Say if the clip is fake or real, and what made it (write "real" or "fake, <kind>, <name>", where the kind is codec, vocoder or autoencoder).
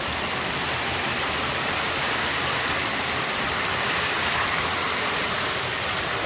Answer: real